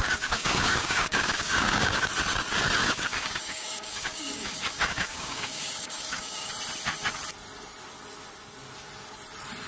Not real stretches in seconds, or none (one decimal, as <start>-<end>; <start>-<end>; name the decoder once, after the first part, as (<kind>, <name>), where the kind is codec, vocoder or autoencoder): 0.0-2.1 (codec, DAC); 2.8-6.5